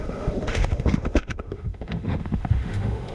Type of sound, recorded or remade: remade